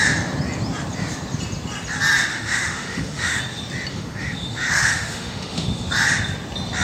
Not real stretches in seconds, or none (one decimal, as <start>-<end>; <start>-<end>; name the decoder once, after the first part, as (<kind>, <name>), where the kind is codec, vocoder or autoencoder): 2.3-3.4 (autoencoder, DAC-VAE); 3.9-5.9